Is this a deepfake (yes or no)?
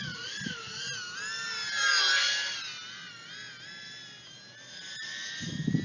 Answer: no